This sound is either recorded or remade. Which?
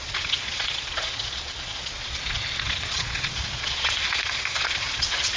remade